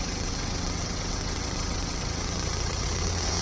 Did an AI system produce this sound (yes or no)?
yes